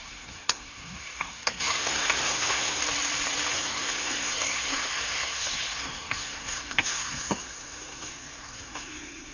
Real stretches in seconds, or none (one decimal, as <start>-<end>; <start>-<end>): 2.8-3.5